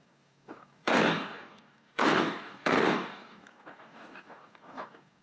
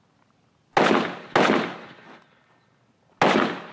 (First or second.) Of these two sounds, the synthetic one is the first